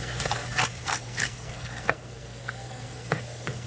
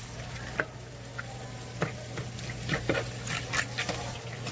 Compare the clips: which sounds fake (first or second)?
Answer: first